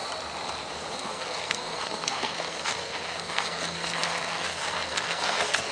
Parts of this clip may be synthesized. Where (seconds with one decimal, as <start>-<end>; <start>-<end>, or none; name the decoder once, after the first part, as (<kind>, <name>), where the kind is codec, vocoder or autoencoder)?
0.7-5.7 (codec, SNAC)